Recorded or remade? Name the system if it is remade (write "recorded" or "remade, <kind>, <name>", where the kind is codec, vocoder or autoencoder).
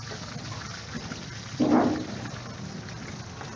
recorded